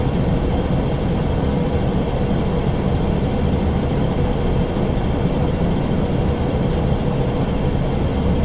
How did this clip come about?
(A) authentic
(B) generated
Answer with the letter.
A